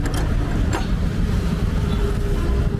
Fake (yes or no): no